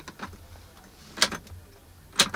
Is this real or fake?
real